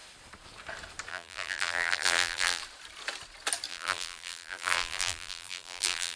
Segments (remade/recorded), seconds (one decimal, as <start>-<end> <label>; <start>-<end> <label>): 0.0-1.1 recorded; 1.1-2.6 remade; 2.6-3.7 recorded; 3.7-6.2 remade